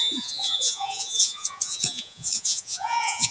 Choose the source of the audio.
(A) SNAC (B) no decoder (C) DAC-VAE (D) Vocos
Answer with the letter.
D